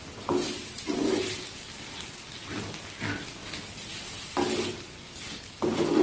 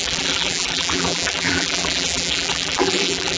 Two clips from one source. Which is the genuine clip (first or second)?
first